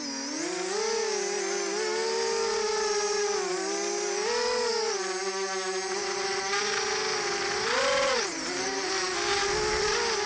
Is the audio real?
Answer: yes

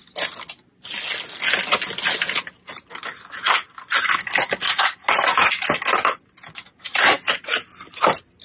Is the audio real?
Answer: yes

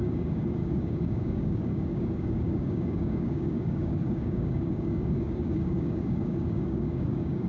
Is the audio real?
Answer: no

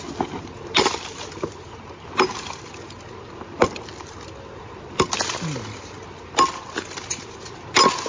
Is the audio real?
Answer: yes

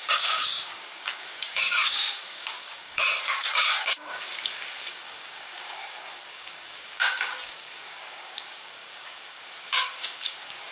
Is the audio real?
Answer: no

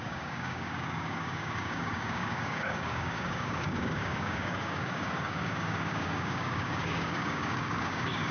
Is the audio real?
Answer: no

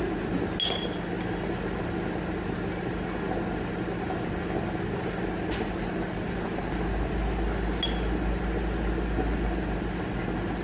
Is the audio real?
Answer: yes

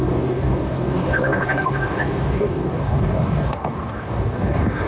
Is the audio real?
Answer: no